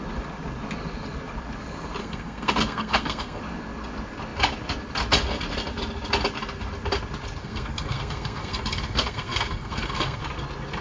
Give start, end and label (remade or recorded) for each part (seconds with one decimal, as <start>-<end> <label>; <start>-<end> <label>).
0.0-2.0 recorded; 2.0-3.4 remade; 3.4-7.4 recorded; 7.4-10.2 remade; 10.2-10.8 recorded

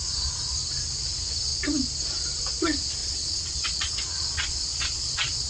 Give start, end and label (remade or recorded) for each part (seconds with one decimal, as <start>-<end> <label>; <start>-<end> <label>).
0.0-3.0 recorded; 3.0-5.5 remade

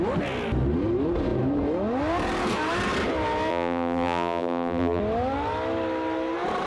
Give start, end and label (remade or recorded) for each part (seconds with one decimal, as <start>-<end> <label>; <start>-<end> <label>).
0.0-3.5 recorded; 3.5-5.0 remade; 5.0-6.7 recorded